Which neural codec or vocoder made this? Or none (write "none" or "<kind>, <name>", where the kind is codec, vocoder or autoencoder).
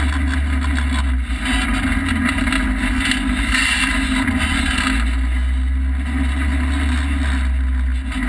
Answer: none